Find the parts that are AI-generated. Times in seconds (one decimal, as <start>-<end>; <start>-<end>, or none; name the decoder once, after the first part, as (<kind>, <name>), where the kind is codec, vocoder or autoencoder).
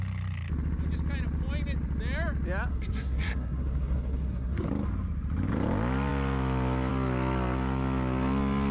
2.7-4.7 (codec, SNAC)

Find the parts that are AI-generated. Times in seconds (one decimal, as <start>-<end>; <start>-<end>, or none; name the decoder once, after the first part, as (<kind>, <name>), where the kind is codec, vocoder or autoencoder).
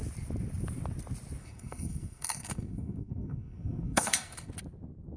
1.4-4.5 (codec, SNAC)